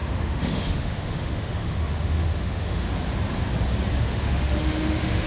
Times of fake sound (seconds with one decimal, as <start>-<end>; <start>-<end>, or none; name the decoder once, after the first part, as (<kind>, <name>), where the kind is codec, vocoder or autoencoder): 0.0-2.9 (autoencoder, DAC-VAE); 4.0-5.3